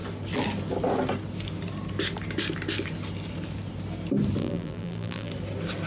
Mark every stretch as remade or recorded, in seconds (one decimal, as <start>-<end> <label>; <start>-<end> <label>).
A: 0.0-4.4 recorded; 4.4-5.3 remade; 5.3-5.9 recorded